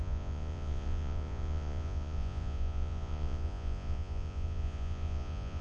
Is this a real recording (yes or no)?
no